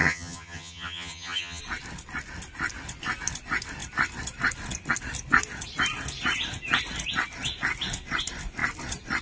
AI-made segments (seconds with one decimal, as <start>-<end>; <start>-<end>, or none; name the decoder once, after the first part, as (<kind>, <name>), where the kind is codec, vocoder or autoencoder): 0.0-1.6 (vocoder, HiFi-GAN)